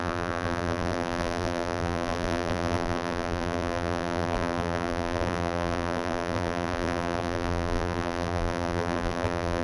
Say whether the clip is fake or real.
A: fake